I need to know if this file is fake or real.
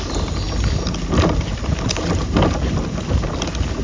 real